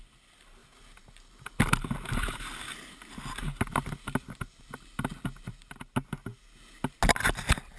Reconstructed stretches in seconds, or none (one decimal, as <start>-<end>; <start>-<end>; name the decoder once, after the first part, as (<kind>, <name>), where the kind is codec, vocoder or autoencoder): none